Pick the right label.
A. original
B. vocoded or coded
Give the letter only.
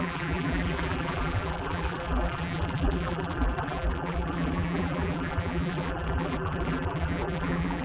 B